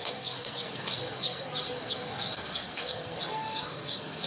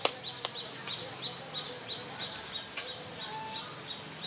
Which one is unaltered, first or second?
second